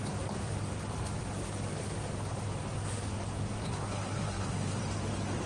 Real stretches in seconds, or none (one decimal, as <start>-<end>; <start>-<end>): 0.0-3.5; 4.8-5.5